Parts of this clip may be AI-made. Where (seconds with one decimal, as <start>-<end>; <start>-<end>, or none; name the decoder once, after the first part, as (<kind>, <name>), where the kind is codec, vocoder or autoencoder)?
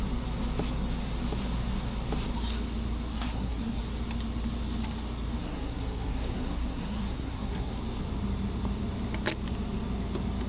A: 3.1-3.8 (codec, SNAC); 5.4-7.7